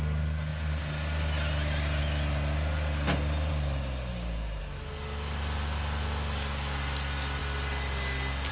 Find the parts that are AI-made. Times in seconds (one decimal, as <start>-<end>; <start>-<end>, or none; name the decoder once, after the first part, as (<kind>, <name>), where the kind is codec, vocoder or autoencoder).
4.1-4.6 (codec, DAC)